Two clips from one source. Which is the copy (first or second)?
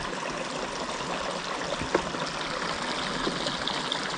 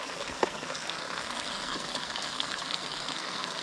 second